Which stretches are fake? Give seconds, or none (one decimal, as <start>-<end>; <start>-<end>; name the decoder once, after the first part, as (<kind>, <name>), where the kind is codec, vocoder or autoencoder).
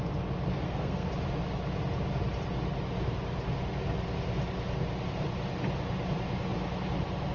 0.6-1.1 (codec, SNAC)